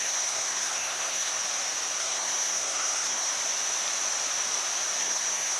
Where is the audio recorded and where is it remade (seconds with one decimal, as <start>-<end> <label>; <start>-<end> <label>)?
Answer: 0.0-1.3 remade; 1.3-2.0 recorded; 2.0-3.3 remade; 3.3-5.0 recorded; 5.0-5.6 remade